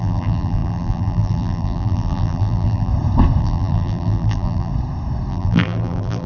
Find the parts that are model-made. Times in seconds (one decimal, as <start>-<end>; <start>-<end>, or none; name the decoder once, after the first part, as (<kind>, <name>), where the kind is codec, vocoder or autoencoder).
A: 0.0-2.9 (vocoder, BigVGAN v2); 3.4-4.7; 5.3-6.3